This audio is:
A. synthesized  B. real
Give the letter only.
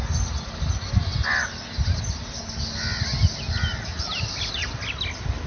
B